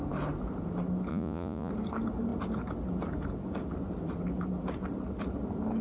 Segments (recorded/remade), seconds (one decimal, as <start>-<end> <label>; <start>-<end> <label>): 0.0-1.1 recorded; 1.1-1.7 remade; 1.7-5.8 recorded